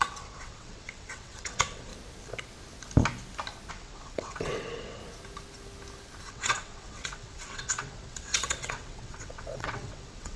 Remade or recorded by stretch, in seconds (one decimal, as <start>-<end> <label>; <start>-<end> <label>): 0.0-1.9 remade; 1.9-3.7 recorded; 3.7-5.0 remade; 5.0-6.3 recorded; 6.3-10.4 remade